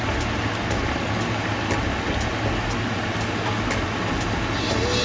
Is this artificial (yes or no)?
no